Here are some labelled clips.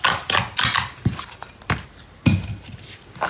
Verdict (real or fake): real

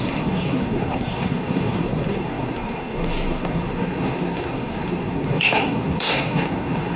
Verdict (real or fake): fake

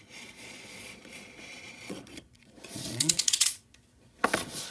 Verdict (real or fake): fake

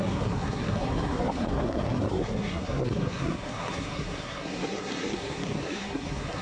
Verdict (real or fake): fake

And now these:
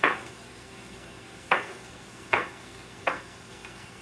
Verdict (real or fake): fake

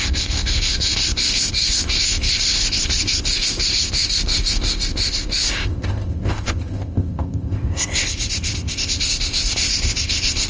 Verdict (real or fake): fake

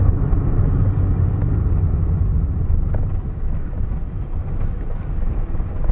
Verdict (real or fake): real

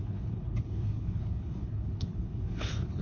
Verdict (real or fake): fake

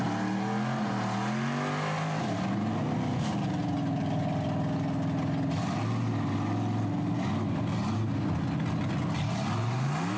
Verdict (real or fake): real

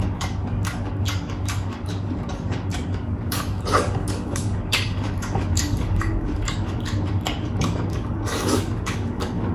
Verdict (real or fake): fake